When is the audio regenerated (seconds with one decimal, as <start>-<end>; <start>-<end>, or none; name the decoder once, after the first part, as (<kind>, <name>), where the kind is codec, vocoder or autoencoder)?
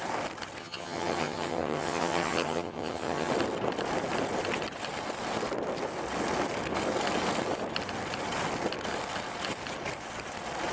0.6-3.3 (vocoder, HiFi-GAN)